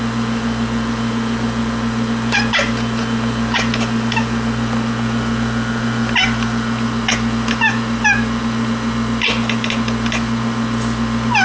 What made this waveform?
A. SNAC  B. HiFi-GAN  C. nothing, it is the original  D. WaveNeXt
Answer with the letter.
C